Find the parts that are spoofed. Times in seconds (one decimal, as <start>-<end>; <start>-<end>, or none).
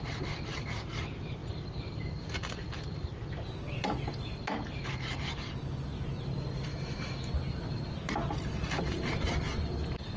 6.7-7.3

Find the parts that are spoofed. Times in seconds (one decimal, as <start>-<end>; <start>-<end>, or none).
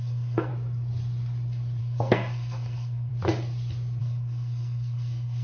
0.0-0.5; 1.8-3.1; 4.0-5.4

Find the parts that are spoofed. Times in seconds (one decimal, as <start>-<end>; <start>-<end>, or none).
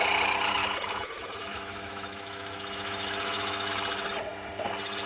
0.6-3.7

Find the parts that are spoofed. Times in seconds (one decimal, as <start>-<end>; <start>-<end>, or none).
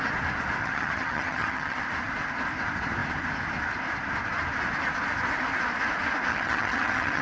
0.6-1.8; 6.3-7.2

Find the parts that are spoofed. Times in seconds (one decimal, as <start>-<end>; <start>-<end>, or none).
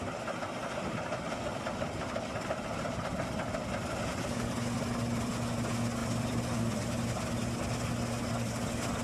0.6-5.3; 6.0-7.1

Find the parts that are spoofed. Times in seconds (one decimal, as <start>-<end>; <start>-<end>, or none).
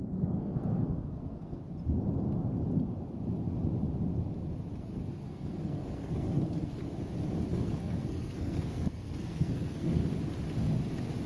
0.0-1.6; 4.8-6.8; 7.5-10.0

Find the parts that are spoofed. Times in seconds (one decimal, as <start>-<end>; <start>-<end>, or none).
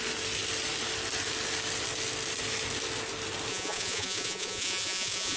3.5-5.4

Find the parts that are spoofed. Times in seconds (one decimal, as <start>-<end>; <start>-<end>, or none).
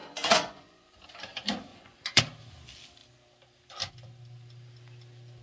0.0-1.0; 1.7-2.2